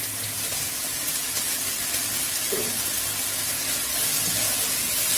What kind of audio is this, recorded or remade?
recorded